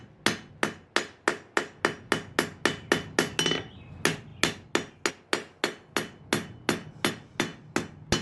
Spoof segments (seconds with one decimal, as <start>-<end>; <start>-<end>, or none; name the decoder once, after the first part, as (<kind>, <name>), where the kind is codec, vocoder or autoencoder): none